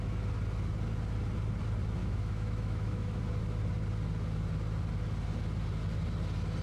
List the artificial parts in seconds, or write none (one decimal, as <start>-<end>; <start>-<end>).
2.0-3.2